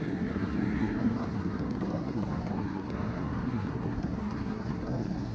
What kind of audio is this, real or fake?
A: fake